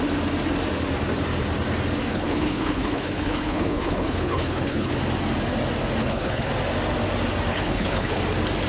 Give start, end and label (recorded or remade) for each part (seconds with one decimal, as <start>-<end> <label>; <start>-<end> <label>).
0.0-2.1 recorded; 2.1-4.9 remade; 4.9-6.0 recorded; 6.0-6.5 remade; 6.5-7.5 recorded; 7.5-8.2 remade; 8.2-8.7 recorded